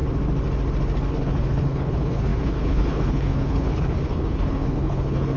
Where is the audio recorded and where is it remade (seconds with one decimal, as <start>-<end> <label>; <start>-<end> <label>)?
0.0-1.1 recorded; 1.1-5.4 remade